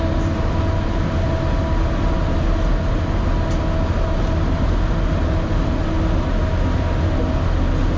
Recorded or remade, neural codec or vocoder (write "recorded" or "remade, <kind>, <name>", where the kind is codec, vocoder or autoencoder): recorded